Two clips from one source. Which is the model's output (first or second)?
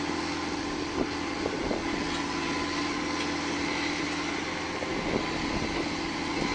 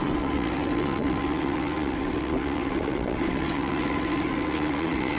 second